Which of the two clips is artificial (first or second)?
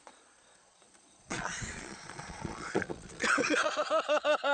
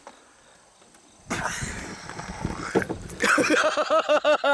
first